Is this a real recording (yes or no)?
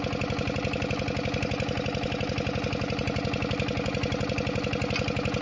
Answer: yes